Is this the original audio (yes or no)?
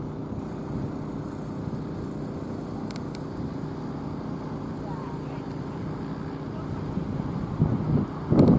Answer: yes